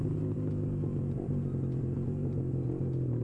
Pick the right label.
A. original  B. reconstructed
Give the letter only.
B